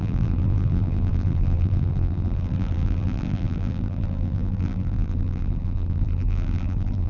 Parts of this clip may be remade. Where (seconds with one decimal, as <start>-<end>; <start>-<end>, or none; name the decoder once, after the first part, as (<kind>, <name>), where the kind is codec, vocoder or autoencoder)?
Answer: 0.0-7.1 (vocoder, BigVGAN v2)